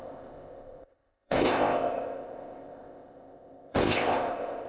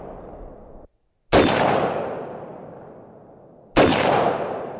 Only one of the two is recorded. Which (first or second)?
second